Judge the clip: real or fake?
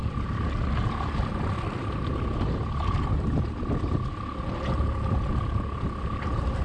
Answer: real